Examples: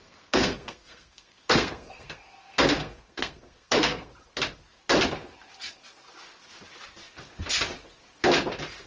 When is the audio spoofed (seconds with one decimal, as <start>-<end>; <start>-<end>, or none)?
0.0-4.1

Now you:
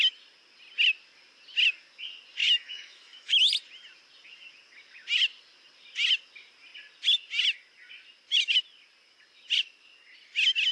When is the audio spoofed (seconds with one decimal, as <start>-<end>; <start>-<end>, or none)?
2.4-3.4

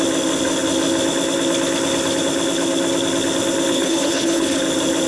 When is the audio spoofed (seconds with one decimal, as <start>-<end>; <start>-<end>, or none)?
3.7-4.6

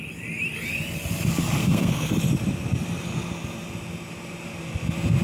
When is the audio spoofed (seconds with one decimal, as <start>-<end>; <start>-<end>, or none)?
1.6-2.1

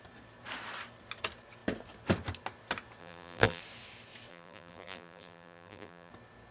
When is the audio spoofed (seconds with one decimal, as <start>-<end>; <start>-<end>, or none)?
3.0-3.6; 4.3-6.1